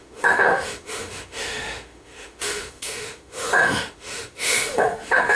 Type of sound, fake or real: fake